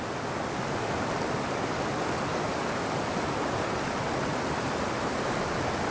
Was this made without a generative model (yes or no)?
yes